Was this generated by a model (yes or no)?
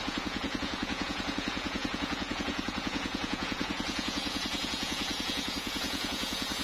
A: yes